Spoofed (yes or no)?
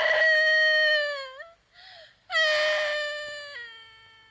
no